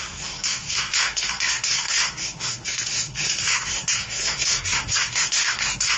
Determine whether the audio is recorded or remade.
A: remade